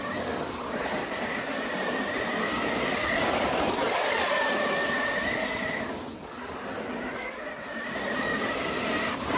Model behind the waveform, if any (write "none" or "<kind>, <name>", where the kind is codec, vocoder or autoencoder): none